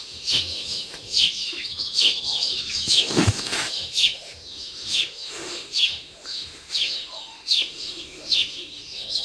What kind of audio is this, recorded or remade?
remade